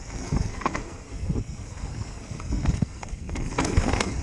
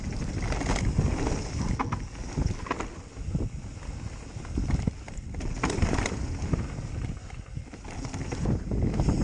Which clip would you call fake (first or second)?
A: first